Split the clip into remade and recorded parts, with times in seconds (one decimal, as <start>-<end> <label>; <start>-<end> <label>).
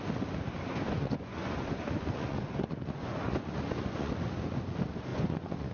0.0-0.7 recorded; 0.7-4.1 remade; 4.1-5.1 recorded; 5.1-5.7 remade